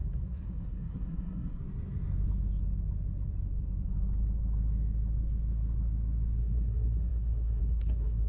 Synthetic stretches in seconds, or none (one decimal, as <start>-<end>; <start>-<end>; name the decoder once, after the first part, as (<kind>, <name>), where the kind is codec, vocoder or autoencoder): 0.0-1.6 (codec, SNAC); 6.4-8.3